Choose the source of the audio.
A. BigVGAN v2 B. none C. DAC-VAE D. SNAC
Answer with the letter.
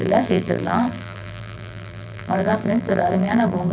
A